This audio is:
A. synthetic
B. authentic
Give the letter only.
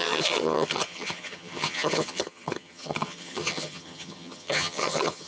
A